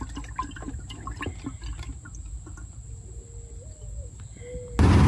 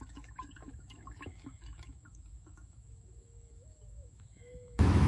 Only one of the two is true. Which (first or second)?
first